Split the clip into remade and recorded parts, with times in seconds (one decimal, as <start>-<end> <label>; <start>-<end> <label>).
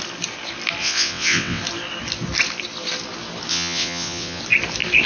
0.0-0.8 recorded; 0.8-1.6 remade; 1.6-3.5 recorded; 3.5-4.4 remade; 4.4-5.1 recorded